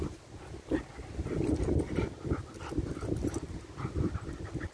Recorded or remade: recorded